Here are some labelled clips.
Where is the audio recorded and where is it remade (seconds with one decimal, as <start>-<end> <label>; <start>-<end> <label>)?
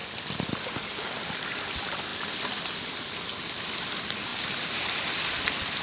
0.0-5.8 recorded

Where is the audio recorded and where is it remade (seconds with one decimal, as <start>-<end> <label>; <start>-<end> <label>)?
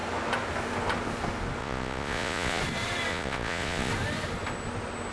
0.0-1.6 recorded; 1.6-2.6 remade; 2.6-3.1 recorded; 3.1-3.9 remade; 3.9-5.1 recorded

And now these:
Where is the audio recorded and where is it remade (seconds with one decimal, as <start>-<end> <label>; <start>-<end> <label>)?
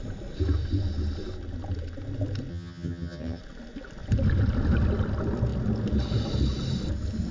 0.0-2.5 recorded; 2.5-3.4 remade; 3.4-7.3 recorded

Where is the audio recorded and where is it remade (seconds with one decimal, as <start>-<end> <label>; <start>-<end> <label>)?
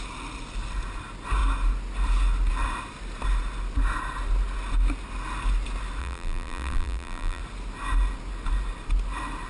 0.0-6.0 recorded; 6.0-7.4 remade; 7.4-9.5 recorded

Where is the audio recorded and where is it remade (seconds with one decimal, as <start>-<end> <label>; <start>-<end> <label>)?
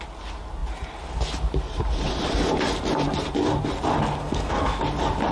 0.0-4.2 recorded; 4.2-4.8 remade; 4.8-5.3 recorded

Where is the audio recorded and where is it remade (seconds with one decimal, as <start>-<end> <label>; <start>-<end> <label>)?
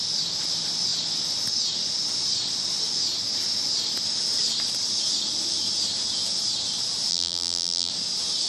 0.0-7.1 recorded; 7.1-7.9 remade; 7.9-8.5 recorded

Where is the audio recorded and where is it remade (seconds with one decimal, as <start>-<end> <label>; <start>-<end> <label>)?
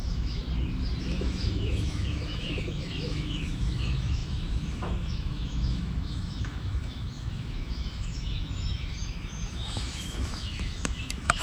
0.0-0.4 remade; 0.4-1.0 recorded; 1.0-11.4 remade